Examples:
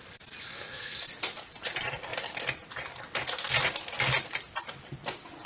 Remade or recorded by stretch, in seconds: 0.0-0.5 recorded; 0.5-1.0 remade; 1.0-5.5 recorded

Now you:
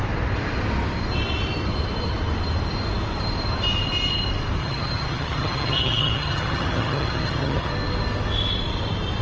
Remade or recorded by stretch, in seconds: 0.0-4.6 recorded; 4.6-7.7 remade; 7.7-9.2 recorded

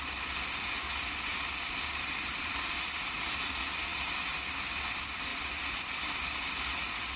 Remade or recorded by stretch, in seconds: 0.0-1.3 recorded; 1.3-2.5 remade; 2.5-3.9 recorded; 3.9-4.4 remade; 4.4-5.3 recorded; 5.3-6.0 remade; 6.0-7.2 recorded

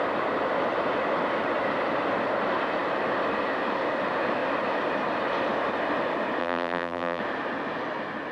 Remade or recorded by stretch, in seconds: 0.0-6.4 recorded; 6.4-7.2 remade; 7.2-8.3 recorded

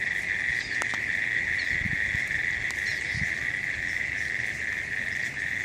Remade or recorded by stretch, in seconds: 0.0-5.6 recorded